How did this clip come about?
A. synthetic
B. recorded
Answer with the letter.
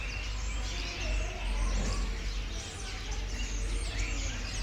B